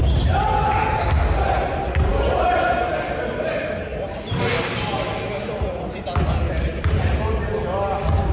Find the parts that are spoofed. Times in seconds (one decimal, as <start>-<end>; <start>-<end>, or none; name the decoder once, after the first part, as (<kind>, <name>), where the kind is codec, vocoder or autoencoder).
none